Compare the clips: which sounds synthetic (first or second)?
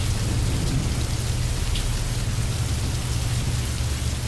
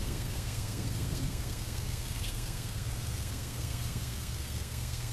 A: second